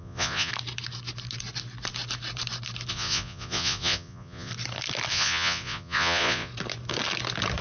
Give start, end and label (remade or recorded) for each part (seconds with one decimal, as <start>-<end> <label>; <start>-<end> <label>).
0.0-0.5 remade; 0.5-2.9 recorded; 2.9-4.5 remade; 4.5-5.1 recorded; 5.1-6.5 remade; 6.5-7.6 recorded